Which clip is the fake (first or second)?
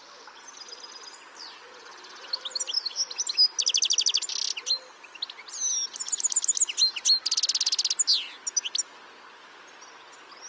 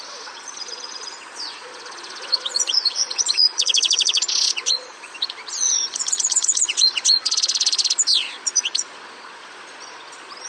second